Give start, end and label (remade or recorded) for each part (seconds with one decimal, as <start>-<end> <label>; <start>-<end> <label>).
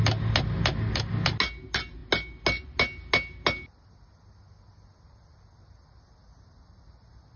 0.0-7.4 recorded